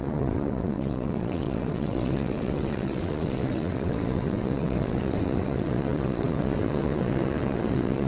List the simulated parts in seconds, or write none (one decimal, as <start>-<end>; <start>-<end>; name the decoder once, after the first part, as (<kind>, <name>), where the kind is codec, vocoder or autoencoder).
0.0-8.1 (vocoder, WaveNeXt)